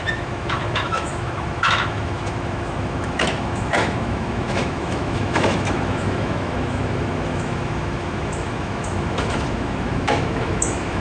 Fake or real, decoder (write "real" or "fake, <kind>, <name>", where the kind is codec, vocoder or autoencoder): fake, autoencoder, DAC-VAE